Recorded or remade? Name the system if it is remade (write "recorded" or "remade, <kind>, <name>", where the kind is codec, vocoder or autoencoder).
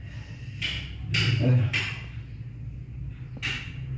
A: recorded